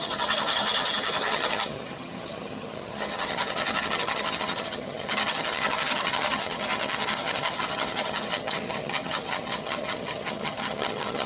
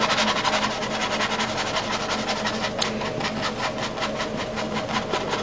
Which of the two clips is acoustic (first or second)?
second